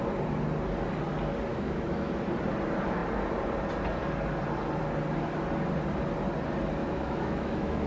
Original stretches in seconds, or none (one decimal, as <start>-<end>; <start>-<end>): 0.0-1.5; 2.1-6.8